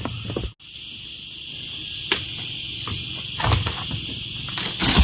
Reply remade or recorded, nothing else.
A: recorded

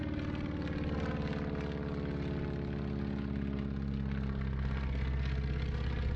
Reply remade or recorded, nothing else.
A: recorded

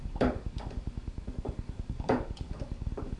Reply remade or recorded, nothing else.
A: remade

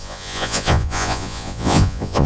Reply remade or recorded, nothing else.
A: remade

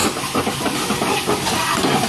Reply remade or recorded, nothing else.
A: recorded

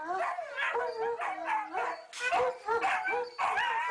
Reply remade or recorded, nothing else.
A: recorded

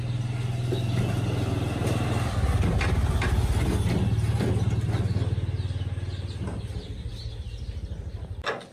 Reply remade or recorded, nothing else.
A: recorded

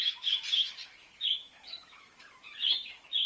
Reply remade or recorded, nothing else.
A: remade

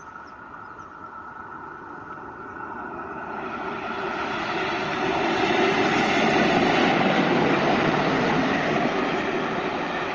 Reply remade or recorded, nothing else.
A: recorded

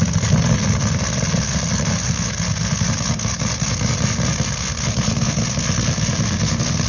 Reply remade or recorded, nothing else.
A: recorded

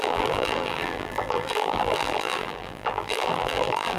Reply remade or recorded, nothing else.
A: remade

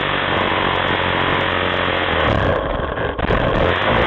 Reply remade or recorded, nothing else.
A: recorded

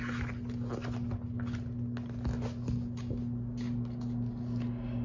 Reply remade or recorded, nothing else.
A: recorded